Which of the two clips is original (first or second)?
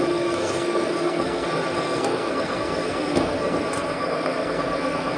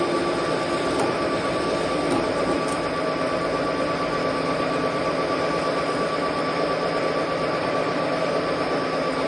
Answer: second